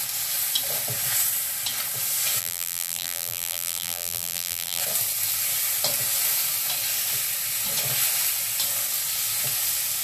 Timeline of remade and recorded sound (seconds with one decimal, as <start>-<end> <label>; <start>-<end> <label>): 0.0-2.4 recorded; 2.4-4.8 remade; 4.8-10.0 recorded